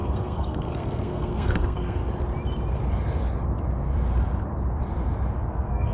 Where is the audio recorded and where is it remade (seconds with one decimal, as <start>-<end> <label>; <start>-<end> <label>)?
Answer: 0.0-2.0 remade; 2.0-5.5 recorded; 5.5-5.9 remade